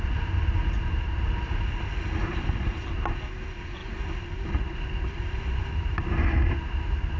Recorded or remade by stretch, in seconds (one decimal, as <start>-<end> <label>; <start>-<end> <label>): 0.0-7.2 recorded